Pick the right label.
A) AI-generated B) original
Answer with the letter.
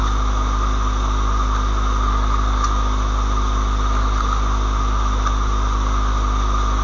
B